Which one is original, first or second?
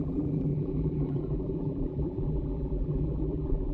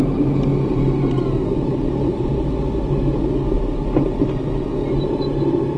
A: second